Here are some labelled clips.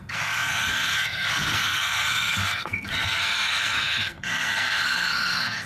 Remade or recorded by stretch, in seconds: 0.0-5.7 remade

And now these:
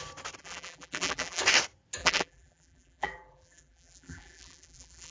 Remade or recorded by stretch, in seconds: 0.0-0.4 recorded; 0.4-1.4 remade; 1.4-2.0 recorded; 2.0-5.1 remade

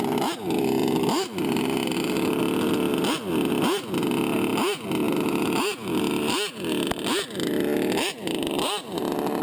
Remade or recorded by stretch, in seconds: 0.0-0.8 recorded; 0.8-2.3 remade; 2.3-4.5 recorded; 4.5-9.0 remade; 9.0-9.4 recorded

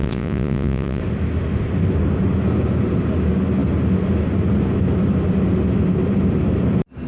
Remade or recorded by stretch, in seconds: 0.0-1.0 remade; 1.0-7.1 recorded